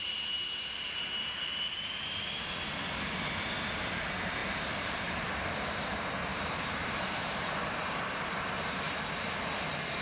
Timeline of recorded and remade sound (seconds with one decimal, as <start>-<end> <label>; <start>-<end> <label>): 0.0-4.4 recorded; 4.4-5.2 remade; 5.2-6.3 recorded; 6.3-9.0 remade; 9.0-10.0 recorded